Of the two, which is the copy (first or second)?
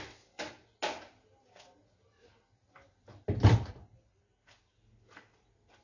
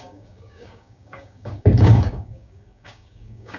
second